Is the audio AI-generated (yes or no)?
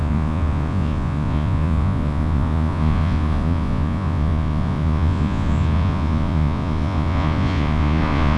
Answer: yes